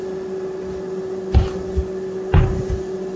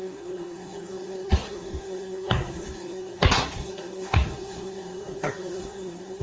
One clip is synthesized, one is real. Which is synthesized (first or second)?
second